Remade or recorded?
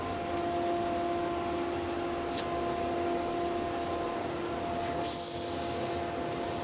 recorded